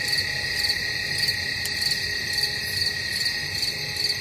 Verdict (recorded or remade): recorded